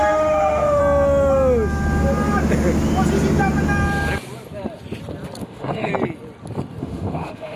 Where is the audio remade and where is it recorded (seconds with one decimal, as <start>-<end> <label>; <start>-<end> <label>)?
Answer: 0.0-0.8 remade; 0.8-5.4 recorded; 5.4-5.9 remade; 5.9-6.8 recorded; 6.8-7.6 remade